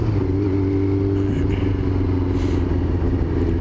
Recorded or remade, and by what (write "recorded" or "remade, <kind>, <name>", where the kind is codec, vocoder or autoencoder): recorded